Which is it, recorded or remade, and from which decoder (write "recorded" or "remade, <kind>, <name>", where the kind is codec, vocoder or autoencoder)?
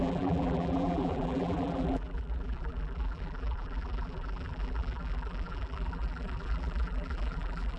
remade, vocoder, BigVGAN v2